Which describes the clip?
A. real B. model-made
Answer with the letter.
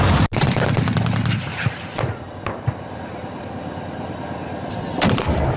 A